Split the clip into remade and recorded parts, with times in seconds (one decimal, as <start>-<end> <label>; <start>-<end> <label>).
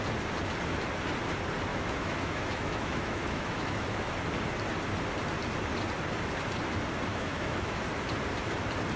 0.0-1.7 recorded; 1.7-4.1 remade; 4.1-7.1 recorded; 7.1-7.8 remade; 7.8-9.0 recorded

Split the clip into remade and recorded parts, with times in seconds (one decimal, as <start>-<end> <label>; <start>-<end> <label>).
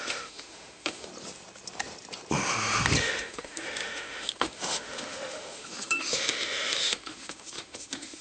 0.0-1.1 remade; 1.1-3.0 recorded; 3.0-8.2 remade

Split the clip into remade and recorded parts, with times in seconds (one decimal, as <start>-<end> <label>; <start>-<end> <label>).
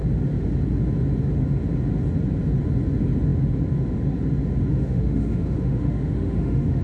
0.0-4.7 recorded; 4.7-6.8 remade